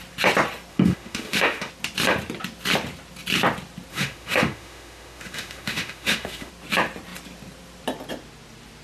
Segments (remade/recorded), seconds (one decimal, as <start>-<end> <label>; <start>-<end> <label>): 0.0-0.7 recorded; 0.7-1.7 remade; 1.7-3.9 recorded; 3.9-6.5 remade; 6.5-8.8 recorded